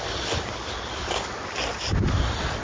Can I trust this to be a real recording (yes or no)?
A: yes